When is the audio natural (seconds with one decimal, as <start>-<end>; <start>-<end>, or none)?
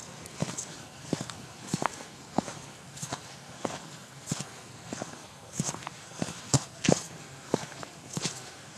none